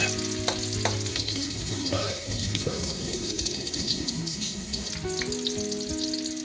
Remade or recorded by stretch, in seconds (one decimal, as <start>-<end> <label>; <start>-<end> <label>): 0.0-1.1 recorded; 1.1-4.9 remade; 4.9-6.4 recorded